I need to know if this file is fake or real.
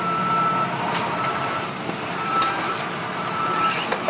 fake